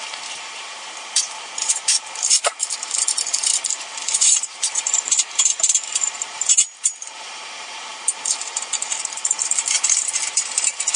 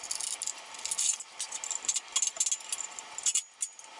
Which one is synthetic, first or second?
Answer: first